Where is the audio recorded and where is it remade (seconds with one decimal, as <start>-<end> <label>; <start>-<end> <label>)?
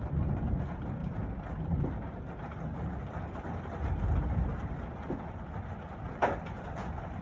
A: 0.0-7.2 recorded